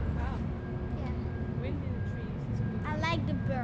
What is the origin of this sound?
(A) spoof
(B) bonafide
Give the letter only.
B